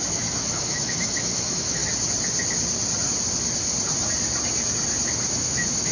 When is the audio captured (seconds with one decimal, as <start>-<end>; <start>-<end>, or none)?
1.8-5.3